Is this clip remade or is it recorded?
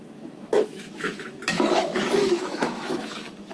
remade